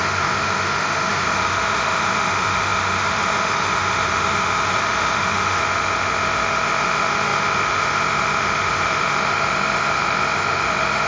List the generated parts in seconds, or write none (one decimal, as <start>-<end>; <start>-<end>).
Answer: 0.0-11.1